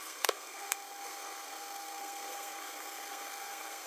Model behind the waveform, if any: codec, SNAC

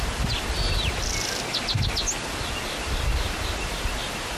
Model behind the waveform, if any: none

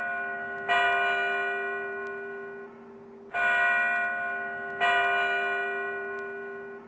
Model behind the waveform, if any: none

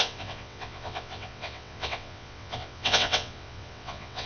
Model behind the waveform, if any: vocoder, WaveNeXt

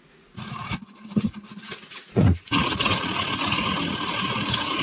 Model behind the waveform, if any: vocoder, Vocos